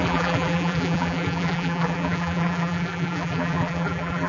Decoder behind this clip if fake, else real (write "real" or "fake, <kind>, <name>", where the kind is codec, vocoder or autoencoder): fake, vocoder, BigVGAN v2